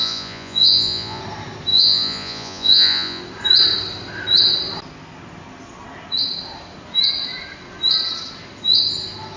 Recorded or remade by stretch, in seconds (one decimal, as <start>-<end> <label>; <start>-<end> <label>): 0.0-1.2 remade; 1.2-1.7 recorded; 1.7-3.2 remade; 3.2-9.4 recorded